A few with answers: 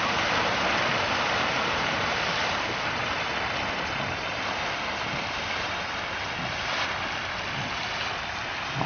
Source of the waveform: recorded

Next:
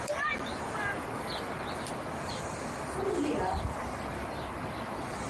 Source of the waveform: recorded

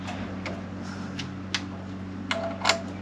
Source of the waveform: recorded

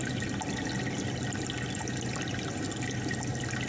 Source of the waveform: recorded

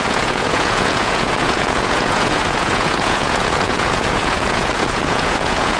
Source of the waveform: remade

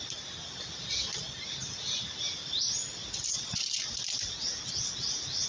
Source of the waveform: recorded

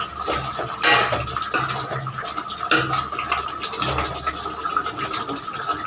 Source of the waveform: recorded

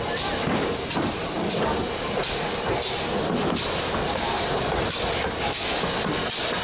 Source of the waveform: recorded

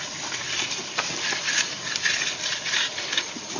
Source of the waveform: recorded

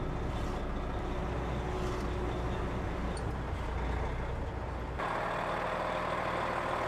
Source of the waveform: recorded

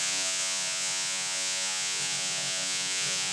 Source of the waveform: remade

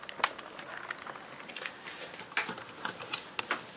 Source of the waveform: recorded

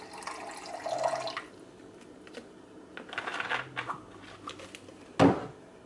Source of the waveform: recorded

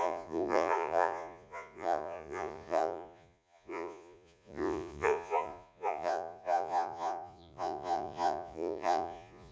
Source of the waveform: remade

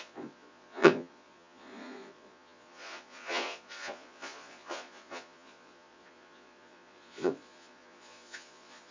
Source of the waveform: remade